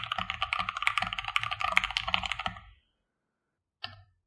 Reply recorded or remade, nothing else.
recorded